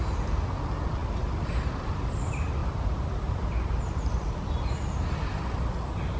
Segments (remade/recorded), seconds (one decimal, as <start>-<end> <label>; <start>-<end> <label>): 0.0-6.2 recorded